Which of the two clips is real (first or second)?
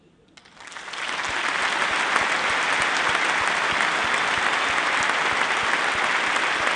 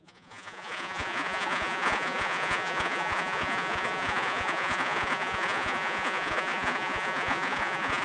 first